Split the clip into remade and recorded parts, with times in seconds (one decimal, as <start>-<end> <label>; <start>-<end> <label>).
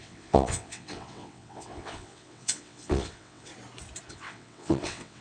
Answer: 0.0-3.5 remade; 3.5-4.1 recorded; 4.1-5.2 remade